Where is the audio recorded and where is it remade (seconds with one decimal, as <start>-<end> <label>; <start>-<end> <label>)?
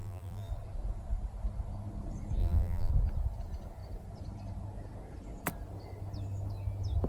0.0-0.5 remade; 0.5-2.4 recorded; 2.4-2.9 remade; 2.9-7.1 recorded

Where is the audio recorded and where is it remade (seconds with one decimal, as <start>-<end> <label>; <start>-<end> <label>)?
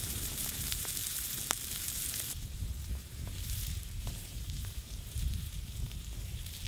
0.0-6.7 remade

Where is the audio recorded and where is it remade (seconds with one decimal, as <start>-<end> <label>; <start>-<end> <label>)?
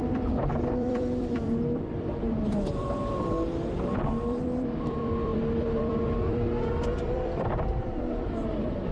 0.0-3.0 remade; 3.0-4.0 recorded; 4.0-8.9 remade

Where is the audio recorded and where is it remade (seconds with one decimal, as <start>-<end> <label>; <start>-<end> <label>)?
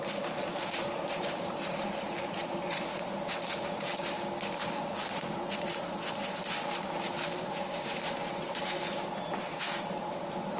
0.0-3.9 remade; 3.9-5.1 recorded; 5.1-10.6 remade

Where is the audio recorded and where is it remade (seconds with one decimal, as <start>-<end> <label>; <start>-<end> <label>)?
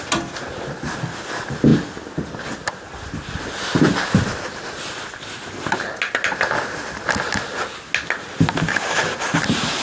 0.0-9.8 recorded